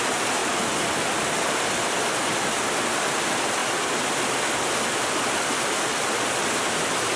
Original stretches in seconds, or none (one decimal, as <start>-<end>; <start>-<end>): 0.0-7.2